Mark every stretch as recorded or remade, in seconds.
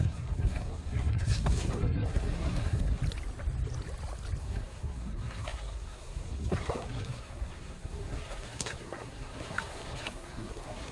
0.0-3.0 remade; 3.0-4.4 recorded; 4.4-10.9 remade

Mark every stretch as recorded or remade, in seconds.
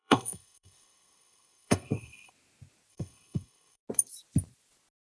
0.0-2.3 remade; 2.3-2.9 recorded; 2.9-3.8 remade; 3.8-5.1 recorded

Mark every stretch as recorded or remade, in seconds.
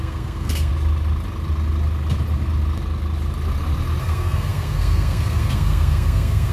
0.0-0.7 remade; 0.7-4.0 recorded; 4.0-6.5 remade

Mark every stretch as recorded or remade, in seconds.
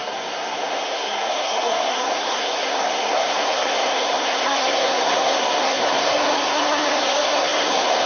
0.0-8.1 remade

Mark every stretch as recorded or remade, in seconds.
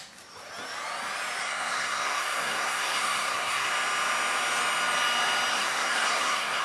0.0-1.4 recorded; 1.4-3.7 remade; 3.7-5.5 recorded; 5.5-6.6 remade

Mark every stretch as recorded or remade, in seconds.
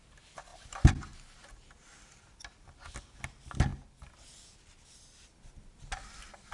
0.0-6.5 recorded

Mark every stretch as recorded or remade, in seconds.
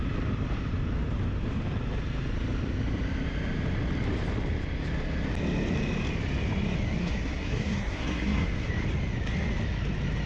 0.0-7.0 recorded; 7.0-8.7 remade; 8.7-10.3 recorded